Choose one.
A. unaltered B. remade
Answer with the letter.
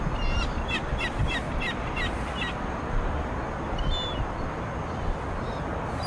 A